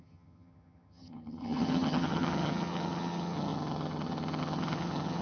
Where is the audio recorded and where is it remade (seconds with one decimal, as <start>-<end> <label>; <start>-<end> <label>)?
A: 0.0-5.2 remade